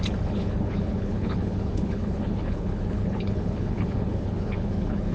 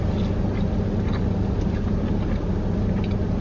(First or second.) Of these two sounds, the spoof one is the first